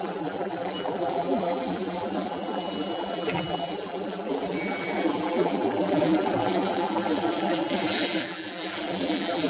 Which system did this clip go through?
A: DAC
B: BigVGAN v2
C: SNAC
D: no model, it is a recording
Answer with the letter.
B